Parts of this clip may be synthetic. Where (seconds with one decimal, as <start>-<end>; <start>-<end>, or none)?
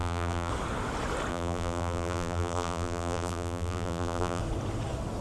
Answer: 0.0-0.5; 1.3-4.4